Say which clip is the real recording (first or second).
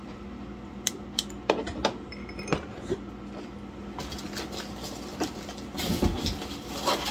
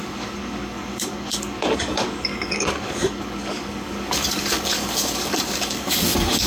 first